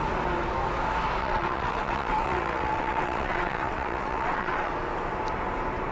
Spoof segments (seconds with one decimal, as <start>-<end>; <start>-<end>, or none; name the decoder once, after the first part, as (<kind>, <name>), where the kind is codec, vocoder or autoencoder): 1.2-4.7 (vocoder, WaveNeXt)